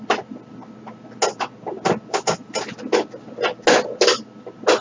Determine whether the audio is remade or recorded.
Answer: recorded